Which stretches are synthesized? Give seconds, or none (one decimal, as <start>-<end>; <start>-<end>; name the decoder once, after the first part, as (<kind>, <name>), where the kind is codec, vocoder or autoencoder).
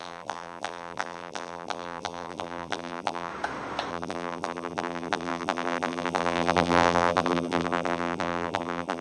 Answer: 0.0-3.3 (vocoder, BigVGAN v2); 3.9-9.0